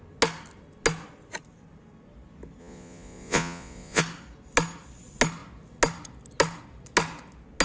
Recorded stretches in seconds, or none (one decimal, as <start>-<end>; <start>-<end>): 0.0-2.6; 4.0-7.6